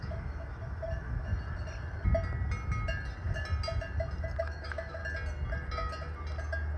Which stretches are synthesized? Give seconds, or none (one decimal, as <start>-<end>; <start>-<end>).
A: 0.0-1.3; 4.4-5.0